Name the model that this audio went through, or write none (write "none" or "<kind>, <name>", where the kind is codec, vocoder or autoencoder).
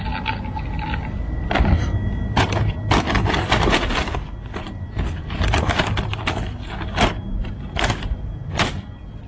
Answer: none